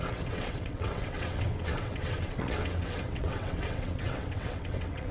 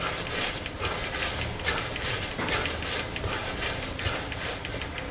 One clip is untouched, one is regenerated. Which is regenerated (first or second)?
first